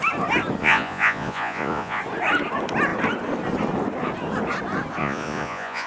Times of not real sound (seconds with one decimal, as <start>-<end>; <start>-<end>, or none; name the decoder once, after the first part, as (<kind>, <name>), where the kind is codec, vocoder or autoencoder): 0.6-2.0 (vocoder, Vocos); 5.0-5.9